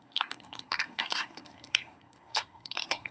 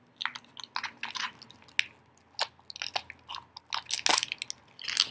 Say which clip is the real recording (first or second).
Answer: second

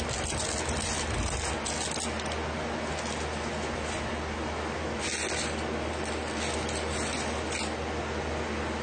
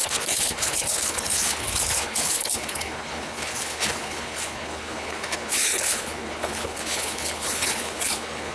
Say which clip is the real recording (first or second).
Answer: first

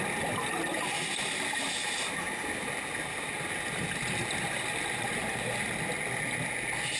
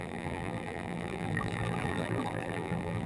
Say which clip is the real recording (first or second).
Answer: first